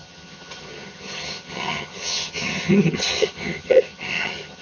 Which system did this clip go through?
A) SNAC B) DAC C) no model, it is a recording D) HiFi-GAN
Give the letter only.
D